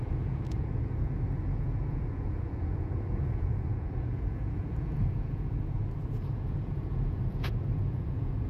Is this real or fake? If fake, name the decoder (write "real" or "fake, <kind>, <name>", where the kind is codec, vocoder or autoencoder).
fake, vocoder, Vocos